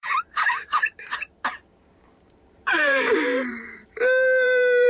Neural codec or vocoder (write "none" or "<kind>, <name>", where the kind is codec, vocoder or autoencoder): vocoder, BigVGAN v2